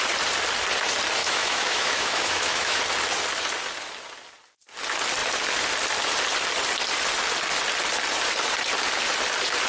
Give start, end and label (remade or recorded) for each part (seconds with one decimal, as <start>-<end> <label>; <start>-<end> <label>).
0.0-1.2 recorded; 1.2-2.8 remade; 2.8-9.7 recorded